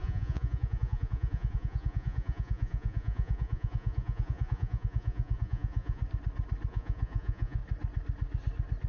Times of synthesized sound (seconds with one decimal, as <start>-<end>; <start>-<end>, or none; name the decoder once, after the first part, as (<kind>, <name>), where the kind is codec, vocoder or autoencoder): 0.0-6.0 (vocoder, Vocos); 6.7-7.6

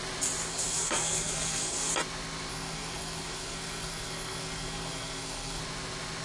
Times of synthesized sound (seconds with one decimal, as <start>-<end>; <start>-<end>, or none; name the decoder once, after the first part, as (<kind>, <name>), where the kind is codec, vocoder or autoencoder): 0.5-1.9 (codec, SNAC); 2.5-5.6